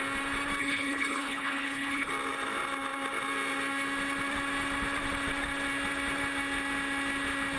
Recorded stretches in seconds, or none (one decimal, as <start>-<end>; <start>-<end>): 0.0-0.6; 2.1-7.6